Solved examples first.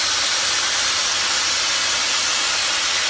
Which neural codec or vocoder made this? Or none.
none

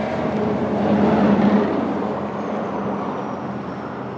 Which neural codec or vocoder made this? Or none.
none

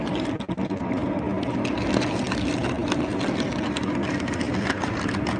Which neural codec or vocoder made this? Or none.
none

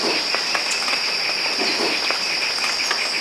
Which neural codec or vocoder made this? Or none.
none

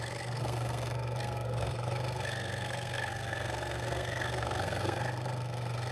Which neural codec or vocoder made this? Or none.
codec, SNAC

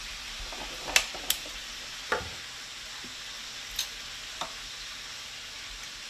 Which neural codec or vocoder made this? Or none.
none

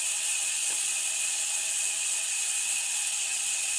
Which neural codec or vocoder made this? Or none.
vocoder, WaveNeXt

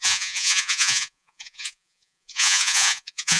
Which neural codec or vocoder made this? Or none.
vocoder, Vocos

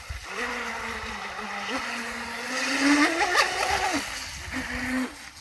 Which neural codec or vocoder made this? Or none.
none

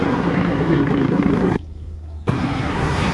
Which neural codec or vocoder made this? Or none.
codec, SNAC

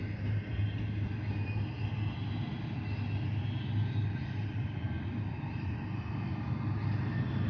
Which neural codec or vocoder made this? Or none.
none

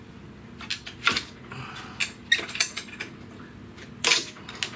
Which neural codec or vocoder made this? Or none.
none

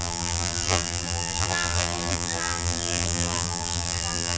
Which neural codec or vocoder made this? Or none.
vocoder, BigVGAN v2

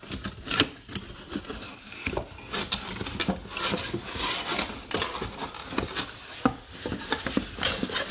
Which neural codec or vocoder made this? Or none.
none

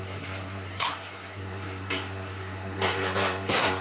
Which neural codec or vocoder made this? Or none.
codec, SNAC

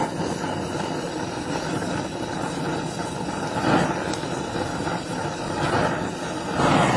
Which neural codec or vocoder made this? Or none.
none